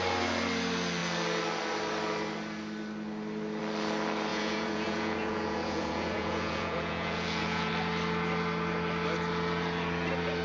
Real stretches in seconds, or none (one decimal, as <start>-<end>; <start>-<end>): 0.0-4.3; 7.7-10.4